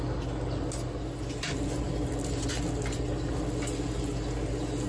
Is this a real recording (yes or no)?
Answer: yes